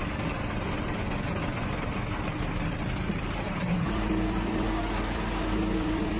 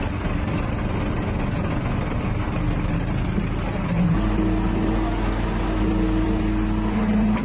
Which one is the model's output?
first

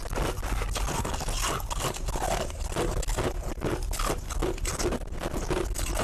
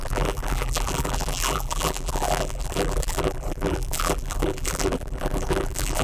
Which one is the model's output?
second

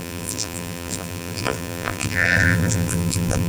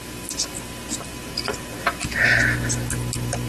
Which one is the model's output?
first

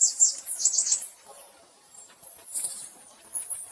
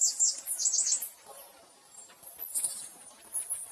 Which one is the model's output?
first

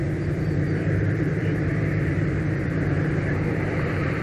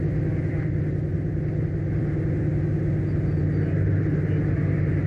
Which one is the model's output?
first